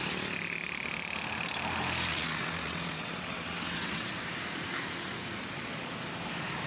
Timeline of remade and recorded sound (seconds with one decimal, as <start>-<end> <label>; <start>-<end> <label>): 0.0-2.1 recorded; 2.1-4.1 remade; 4.1-6.7 recorded